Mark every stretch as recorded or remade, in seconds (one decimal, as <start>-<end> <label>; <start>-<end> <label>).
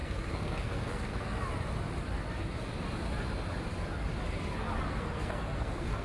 0.0-1.3 remade; 1.3-4.9 recorded; 4.9-6.0 remade